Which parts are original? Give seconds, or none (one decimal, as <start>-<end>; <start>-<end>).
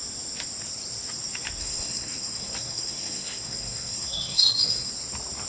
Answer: 0.0-1.6; 4.9-5.5